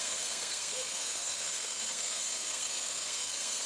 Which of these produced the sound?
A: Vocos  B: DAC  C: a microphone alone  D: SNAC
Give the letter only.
D